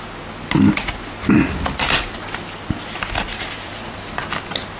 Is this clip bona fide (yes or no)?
yes